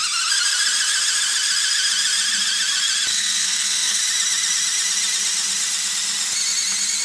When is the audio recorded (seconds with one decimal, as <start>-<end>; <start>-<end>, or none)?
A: 0.0-3.1; 4.0-7.0